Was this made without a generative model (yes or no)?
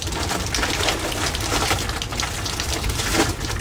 yes